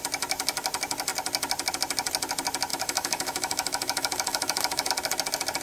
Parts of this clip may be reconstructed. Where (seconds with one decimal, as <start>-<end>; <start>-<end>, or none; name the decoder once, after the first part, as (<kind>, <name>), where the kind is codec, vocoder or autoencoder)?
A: 2.7-4.9 (autoencoder, DAC-VAE)